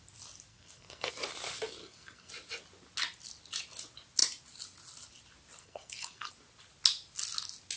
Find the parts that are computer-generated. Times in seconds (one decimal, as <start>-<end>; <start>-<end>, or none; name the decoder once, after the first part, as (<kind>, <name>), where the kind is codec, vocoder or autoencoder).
0.5-1.1 (codec, SNAC); 1.8-2.3; 5.6-6.3